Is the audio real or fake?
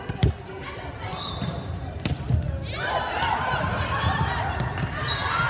real